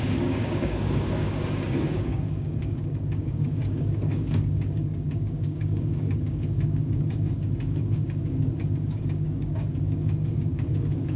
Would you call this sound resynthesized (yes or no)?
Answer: yes